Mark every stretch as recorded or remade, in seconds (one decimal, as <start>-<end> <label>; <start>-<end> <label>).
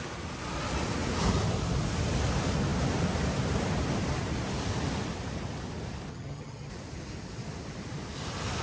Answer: 0.0-6.1 recorded; 6.1-6.7 remade; 6.7-8.6 recorded